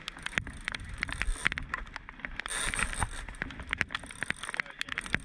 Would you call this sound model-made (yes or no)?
no